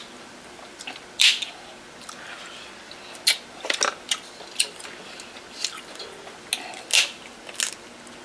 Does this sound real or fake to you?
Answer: real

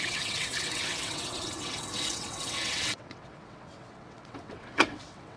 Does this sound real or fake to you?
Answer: fake